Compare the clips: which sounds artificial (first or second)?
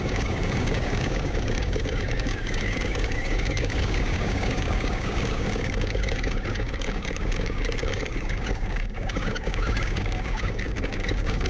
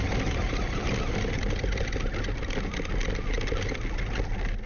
first